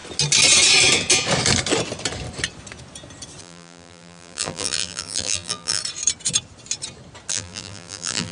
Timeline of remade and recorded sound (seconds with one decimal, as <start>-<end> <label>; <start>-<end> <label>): 0.0-3.4 recorded; 3.4-5.8 remade; 5.8-7.3 recorded; 7.3-8.3 remade